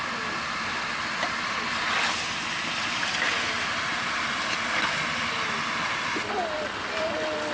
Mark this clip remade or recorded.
recorded